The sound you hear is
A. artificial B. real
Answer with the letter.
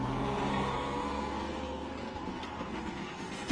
A